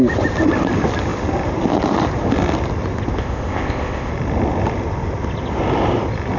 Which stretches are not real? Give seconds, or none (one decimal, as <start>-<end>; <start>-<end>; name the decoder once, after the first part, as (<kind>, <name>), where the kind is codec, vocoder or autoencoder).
3.2-4.1 (codec, ZipCodec)